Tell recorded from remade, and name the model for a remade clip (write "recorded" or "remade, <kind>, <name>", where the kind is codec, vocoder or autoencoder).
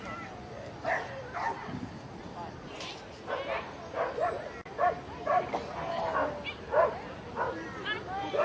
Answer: recorded